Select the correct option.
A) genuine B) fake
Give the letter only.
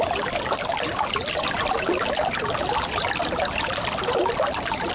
A